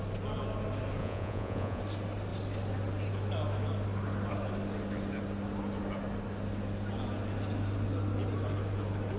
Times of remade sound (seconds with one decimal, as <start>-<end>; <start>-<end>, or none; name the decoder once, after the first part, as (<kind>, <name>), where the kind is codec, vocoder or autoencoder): 1.0-1.8 (vocoder, Vocos)